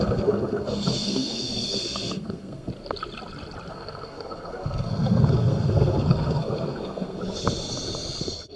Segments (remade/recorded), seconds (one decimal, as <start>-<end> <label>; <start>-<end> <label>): 0.0-2.7 remade; 2.7-3.7 recorded; 3.7-7.2 remade; 7.2-8.2 recorded; 8.2-8.6 remade